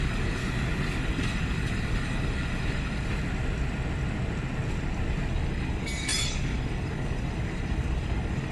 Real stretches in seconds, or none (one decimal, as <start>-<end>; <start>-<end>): 0.4-1.0; 3.1-5.3